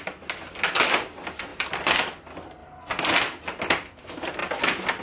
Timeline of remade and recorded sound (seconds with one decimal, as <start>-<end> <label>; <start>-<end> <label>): 0.0-5.0 recorded